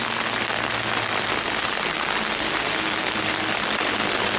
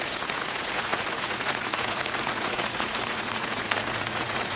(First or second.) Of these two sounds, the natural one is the first